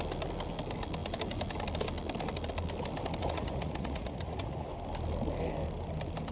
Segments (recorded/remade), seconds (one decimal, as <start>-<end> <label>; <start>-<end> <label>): 0.0-3.2 recorded; 3.2-4.7 remade; 4.7-6.3 recorded